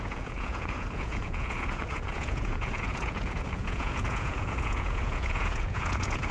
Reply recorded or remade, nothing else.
remade